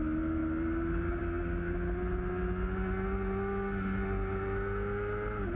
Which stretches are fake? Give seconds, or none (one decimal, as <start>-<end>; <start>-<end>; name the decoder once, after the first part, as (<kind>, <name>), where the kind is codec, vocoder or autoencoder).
none